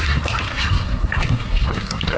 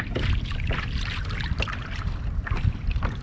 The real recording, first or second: second